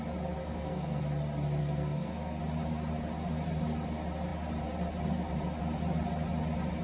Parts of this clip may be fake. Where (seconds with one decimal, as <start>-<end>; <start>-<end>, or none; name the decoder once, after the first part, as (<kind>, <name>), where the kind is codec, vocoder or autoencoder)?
0.4-1.0 (codec, SNAC); 1.6-2.4